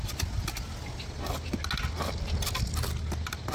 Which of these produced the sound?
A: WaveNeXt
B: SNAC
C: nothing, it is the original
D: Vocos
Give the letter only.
C